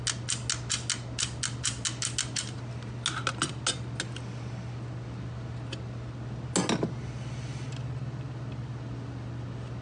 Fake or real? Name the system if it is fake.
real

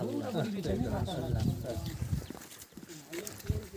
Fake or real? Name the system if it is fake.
fake, vocoder, BigVGAN v2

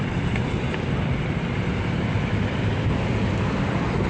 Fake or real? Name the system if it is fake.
fake, vocoder, BigVGAN v2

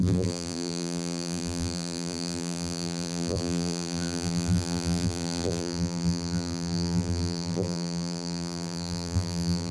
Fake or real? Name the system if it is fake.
fake, vocoder, BigVGAN v2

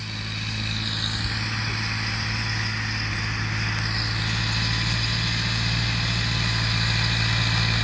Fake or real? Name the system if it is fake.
real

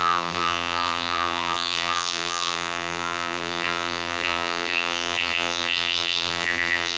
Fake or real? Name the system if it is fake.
fake, vocoder, BigVGAN v2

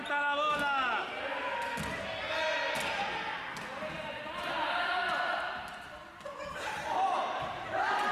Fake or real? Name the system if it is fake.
real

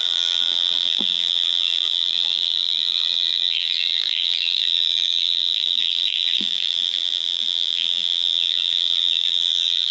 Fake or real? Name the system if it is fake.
fake, vocoder, BigVGAN v2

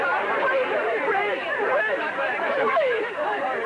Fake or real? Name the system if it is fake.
fake, vocoder, BigVGAN v2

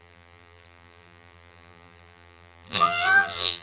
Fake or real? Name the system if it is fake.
fake, vocoder, BigVGAN v2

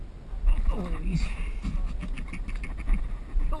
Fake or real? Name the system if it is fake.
real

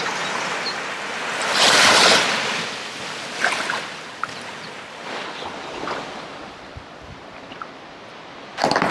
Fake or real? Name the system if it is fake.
real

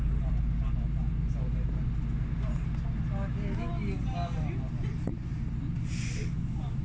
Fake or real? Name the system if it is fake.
real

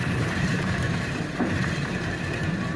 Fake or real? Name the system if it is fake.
fake, vocoder, BigVGAN v2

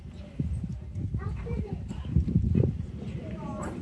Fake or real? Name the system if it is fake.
fake, vocoder, BigVGAN v2